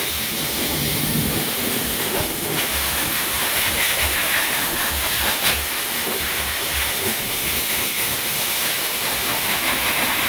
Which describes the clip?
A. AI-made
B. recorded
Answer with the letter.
A